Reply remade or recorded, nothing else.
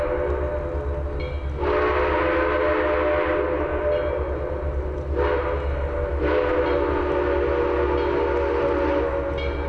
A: recorded